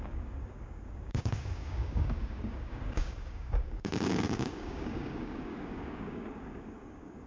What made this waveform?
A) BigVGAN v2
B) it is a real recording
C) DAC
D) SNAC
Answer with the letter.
C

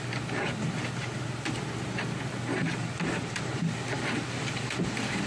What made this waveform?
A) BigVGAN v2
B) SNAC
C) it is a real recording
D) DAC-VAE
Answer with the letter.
A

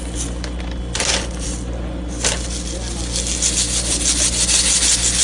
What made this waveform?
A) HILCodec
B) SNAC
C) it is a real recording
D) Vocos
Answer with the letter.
C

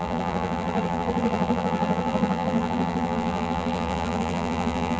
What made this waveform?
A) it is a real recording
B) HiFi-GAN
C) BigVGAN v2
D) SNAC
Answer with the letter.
C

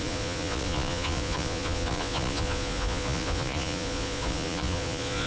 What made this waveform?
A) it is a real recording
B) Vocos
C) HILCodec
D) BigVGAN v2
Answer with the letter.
B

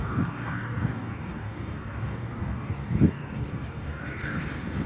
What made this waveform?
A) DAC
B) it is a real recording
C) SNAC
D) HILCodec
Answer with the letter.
A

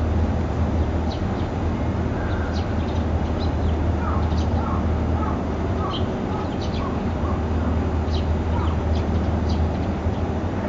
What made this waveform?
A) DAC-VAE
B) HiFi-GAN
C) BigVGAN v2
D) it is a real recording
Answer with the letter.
D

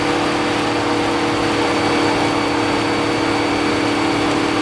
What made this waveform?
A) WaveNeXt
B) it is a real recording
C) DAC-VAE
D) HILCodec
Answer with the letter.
B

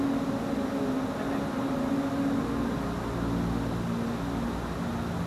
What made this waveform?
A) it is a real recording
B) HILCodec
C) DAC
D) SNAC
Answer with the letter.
A